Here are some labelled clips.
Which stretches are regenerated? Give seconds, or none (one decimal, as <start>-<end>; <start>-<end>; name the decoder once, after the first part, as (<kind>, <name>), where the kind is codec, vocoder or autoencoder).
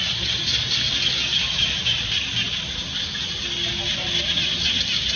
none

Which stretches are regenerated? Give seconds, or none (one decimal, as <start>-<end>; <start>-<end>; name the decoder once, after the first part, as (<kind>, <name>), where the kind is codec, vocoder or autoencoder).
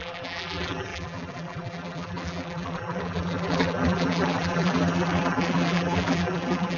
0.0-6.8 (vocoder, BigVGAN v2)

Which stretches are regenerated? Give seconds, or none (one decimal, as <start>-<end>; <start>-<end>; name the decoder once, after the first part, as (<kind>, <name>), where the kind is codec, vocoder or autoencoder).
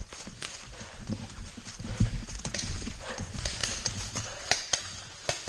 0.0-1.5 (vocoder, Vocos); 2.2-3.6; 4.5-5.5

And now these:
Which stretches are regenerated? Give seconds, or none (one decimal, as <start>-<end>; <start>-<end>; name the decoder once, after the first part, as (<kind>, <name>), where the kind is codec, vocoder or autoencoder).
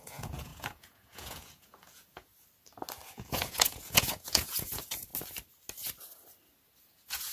0.0-2.3 (vocoder, Vocos); 3.1-5.1; 6.8-7.3